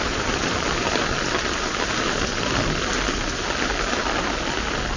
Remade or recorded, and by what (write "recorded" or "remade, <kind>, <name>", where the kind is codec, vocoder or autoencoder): recorded